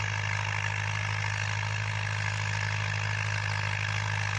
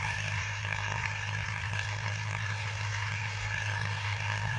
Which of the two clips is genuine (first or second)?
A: first